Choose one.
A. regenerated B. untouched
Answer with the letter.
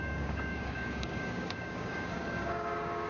A